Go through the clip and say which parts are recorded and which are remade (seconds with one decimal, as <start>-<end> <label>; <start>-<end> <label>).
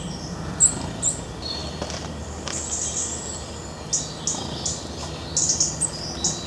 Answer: 0.0-1.6 recorded; 1.6-3.1 remade; 3.1-6.5 recorded